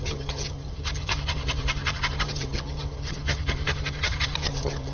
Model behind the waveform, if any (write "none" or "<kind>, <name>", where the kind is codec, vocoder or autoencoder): vocoder, HiFi-GAN